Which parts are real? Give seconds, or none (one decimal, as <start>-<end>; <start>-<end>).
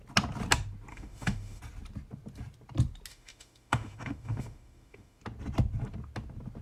0.0-0.9; 1.6-3.1; 5.2-6.6